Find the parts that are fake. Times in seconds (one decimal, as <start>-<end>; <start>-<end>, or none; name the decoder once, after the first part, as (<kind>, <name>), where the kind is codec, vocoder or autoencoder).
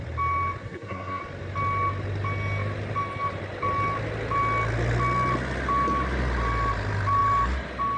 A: 0.6-1.2 (codec, SNAC)